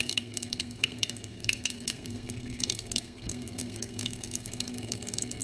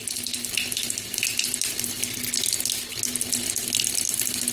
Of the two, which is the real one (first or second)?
second